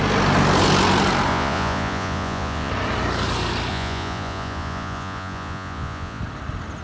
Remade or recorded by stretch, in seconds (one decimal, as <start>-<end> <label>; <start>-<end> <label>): 0.0-1.3 recorded; 1.3-2.7 remade; 2.7-3.7 recorded; 3.7-6.2 remade; 6.2-6.8 recorded